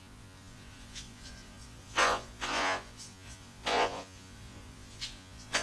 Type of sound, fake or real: fake